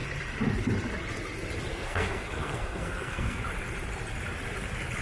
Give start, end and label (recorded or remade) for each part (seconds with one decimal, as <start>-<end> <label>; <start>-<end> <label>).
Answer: 0.0-1.7 recorded; 1.7-3.4 remade; 3.4-5.0 recorded